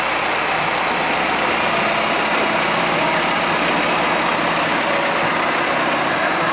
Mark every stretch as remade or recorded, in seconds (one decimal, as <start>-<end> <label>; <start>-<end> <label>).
0.0-6.5 recorded